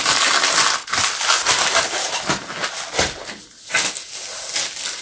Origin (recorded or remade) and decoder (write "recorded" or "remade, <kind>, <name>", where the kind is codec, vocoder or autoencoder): recorded